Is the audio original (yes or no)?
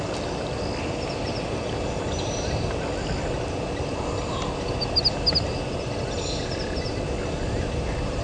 yes